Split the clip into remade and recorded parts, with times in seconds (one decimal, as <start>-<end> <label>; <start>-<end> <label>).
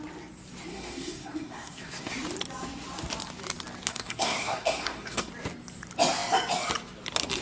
0.0-0.7 recorded; 0.7-2.1 remade; 2.1-3.9 recorded; 3.9-5.3 remade; 5.3-7.4 recorded